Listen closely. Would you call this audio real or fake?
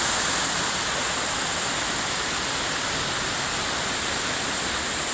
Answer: real